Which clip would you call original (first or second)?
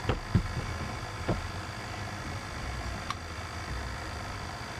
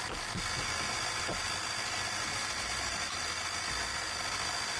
second